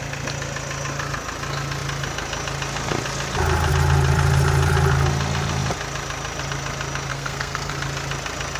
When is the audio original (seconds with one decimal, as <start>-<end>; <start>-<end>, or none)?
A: 0.0-7.1; 7.7-8.6